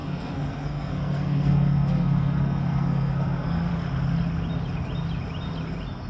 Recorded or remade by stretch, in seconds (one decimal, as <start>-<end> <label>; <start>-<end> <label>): 0.0-3.7 remade; 3.7-6.1 recorded